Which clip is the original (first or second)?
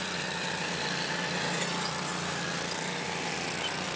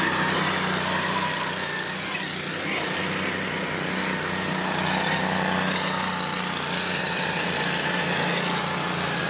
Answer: second